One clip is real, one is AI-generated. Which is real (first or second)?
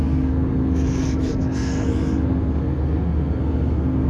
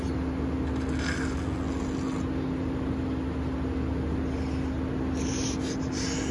second